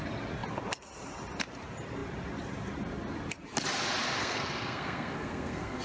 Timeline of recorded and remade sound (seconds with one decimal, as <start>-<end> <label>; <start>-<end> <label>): 0.0-4.2 recorded; 4.2-5.8 remade